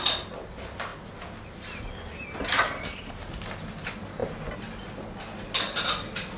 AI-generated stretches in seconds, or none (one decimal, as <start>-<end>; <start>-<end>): none